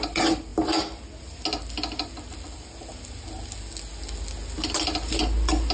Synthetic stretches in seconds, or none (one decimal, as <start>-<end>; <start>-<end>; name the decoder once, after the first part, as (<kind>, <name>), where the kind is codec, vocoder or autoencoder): none